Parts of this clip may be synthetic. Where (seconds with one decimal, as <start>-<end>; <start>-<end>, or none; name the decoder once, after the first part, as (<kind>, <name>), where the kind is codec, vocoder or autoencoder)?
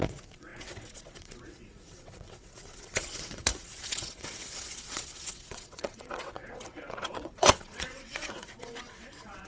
0.0-9.5 (vocoder, WaveNeXt)